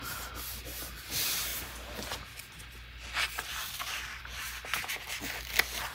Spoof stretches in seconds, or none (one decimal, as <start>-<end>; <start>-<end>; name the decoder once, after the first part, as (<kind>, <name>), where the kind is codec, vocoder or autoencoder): 3.5-4.2 (codec, DAC)